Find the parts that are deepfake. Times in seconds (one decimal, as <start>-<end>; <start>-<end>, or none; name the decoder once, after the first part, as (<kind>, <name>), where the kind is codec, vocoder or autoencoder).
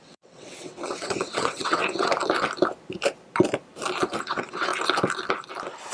0.0-2.1 (vocoder, WaveNeXt); 4.2-4.7